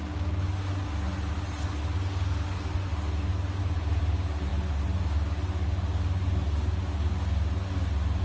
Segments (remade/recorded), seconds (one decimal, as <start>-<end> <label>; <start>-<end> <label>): 0.0-3.6 recorded; 3.6-4.5 remade; 4.5-8.2 recorded